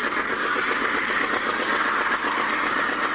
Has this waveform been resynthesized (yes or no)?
no